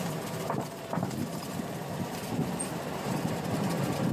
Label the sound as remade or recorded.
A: recorded